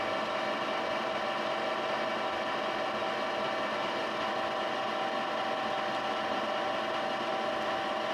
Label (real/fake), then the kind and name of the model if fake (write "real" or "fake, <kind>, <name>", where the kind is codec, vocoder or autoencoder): real